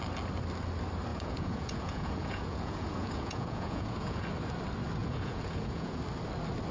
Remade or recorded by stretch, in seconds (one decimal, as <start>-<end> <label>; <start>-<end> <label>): 0.0-1.1 recorded; 1.1-4.3 remade; 4.3-5.0 recorded; 5.0-6.0 remade; 6.0-6.7 recorded